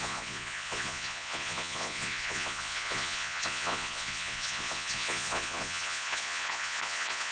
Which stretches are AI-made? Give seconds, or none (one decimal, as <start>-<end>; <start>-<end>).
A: 0.0-7.3